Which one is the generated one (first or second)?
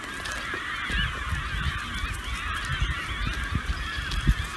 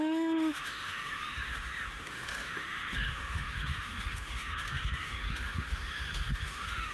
second